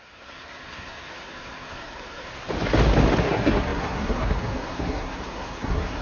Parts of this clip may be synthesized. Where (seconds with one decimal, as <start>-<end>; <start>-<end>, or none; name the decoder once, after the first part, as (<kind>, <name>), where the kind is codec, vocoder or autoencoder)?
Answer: 0.0-2.3 (codec, SNAC); 3.2-6.0